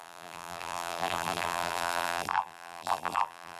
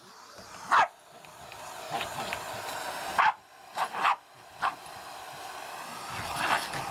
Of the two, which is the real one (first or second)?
second